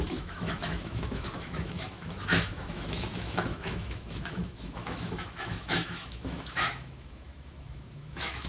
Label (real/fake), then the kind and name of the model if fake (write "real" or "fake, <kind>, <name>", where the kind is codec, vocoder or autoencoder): fake, autoencoder, DAC-VAE